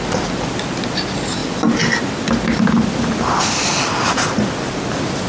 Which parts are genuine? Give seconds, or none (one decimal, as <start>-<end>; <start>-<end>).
0.0-5.3